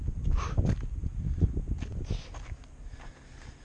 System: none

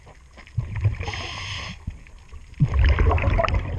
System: none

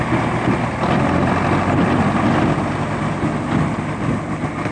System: none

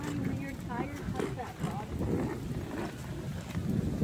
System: none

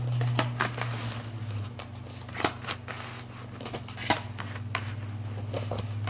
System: none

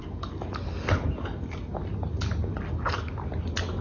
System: none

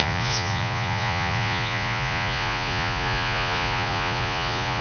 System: vocoder, Vocos